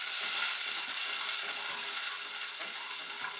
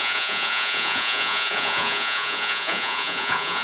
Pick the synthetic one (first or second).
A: second